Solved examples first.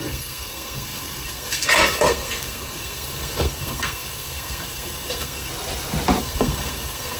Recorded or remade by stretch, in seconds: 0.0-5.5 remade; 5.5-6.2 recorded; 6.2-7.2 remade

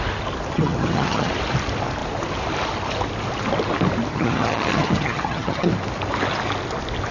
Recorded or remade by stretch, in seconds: 0.0-0.5 recorded; 0.5-1.3 remade; 1.3-4.1 recorded; 4.1-5.7 remade; 5.7-7.1 recorded

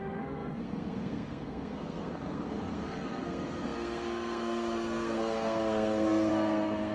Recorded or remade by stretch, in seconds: 0.0-6.9 remade

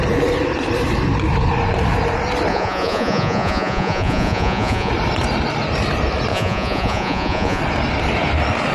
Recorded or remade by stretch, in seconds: 0.0-2.5 recorded; 2.5-4.9 remade; 4.9-6.3 recorded; 6.3-7.6 remade; 7.6-8.7 recorded

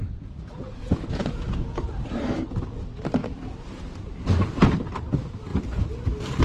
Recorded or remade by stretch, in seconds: 0.0-1.9 remade; 1.9-6.4 recorded

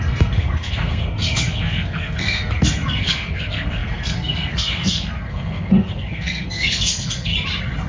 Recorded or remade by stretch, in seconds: 0.0-7.3 remade; 7.3-7.9 recorded

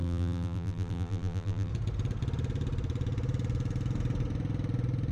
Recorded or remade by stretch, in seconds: 0.0-1.7 remade; 1.7-5.1 recorded

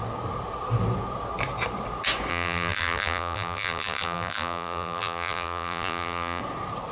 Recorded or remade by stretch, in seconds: 0.0-2.3 recorded; 2.3-6.4 remade; 6.4-6.9 recorded